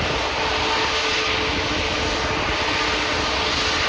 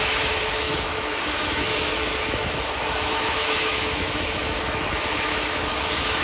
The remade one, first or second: second